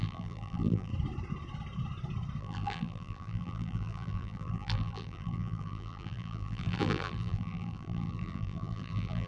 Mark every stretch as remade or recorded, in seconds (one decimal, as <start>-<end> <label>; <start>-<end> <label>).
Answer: 0.0-0.9 remade; 0.9-2.4 recorded; 2.4-9.3 remade